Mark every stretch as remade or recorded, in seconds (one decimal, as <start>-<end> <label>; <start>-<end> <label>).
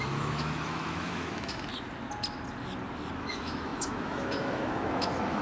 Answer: 0.0-1.7 remade; 1.7-3.2 recorded; 3.2-5.4 remade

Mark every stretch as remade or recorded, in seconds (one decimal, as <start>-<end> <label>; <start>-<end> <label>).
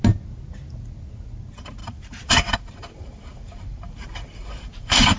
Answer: 0.0-1.8 recorded; 1.8-5.2 remade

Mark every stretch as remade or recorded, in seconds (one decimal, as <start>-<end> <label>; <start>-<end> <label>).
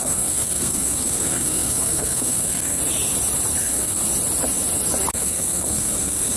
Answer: 0.0-2.8 remade; 2.8-3.6 recorded; 3.6-4.0 remade; 4.0-5.1 recorded; 5.1-6.4 remade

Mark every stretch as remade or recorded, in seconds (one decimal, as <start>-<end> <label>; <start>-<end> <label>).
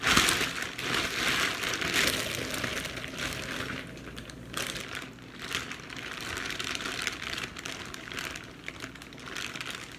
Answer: 0.0-2.7 recorded; 2.7-8.0 remade; 8.0-10.0 recorded